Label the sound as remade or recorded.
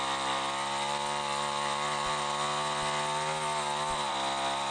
recorded